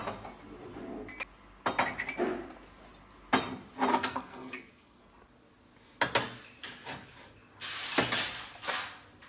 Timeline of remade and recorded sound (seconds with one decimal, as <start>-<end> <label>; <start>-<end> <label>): 0.0-3.9 recorded; 3.9-5.0 remade; 5.0-9.3 recorded